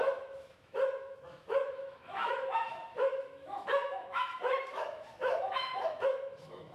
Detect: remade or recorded remade